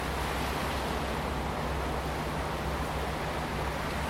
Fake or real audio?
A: real